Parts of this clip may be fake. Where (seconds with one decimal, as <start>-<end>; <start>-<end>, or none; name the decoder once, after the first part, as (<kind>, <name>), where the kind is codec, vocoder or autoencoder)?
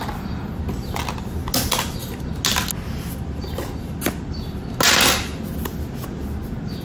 none